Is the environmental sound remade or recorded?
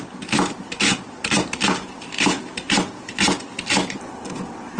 recorded